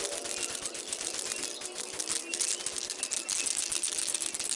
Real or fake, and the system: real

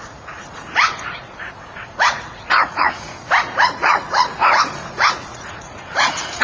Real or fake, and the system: fake, vocoder, Vocos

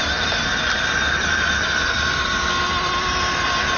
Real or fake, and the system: fake, vocoder, BigVGAN v2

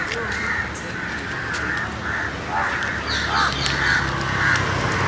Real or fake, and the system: real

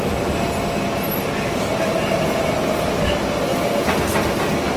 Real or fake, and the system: real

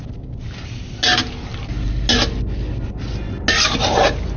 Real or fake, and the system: real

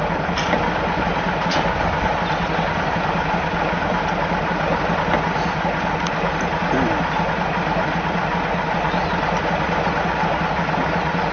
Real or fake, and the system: real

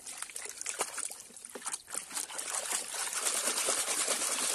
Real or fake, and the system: real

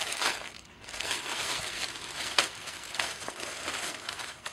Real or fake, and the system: fake, codec, SNAC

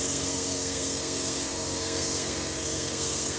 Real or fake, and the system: fake, codec, SNAC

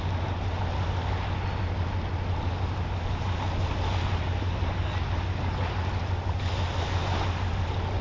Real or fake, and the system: real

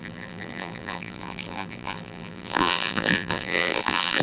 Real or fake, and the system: fake, vocoder, BigVGAN v2